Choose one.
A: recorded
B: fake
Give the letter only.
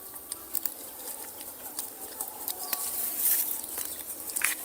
B